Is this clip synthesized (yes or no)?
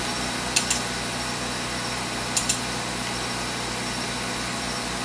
no